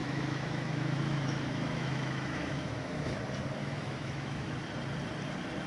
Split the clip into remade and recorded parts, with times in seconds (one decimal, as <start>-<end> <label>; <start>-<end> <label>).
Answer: 0.0-3.2 remade; 3.2-3.6 recorded; 3.6-4.5 remade; 4.5-5.7 recorded